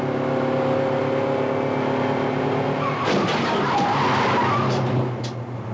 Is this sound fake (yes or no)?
no